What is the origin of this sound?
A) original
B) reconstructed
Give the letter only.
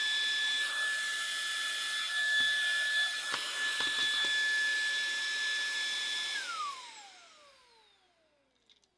A